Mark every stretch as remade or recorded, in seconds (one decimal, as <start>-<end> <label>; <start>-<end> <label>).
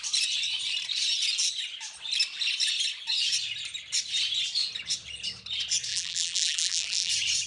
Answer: 0.0-5.9 recorded; 5.9-7.1 remade; 7.1-7.5 recorded